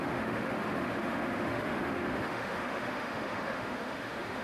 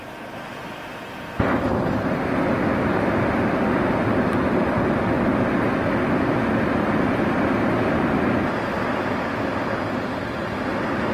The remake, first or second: first